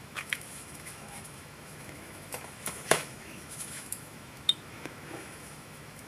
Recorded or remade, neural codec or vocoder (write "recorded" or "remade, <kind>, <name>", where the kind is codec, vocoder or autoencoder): remade, autoencoder, DAC-VAE